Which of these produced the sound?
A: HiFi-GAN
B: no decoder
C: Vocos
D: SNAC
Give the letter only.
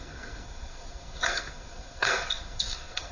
D